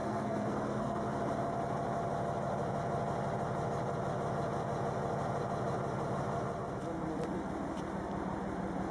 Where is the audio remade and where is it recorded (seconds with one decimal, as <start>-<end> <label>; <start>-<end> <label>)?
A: 0.0-1.0 remade; 1.0-8.9 recorded